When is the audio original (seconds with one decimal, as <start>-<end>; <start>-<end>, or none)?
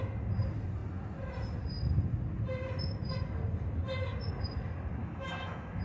0.0-5.0